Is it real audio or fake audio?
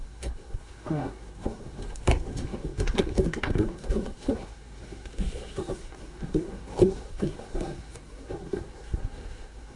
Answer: fake